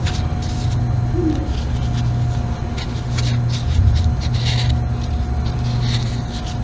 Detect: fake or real real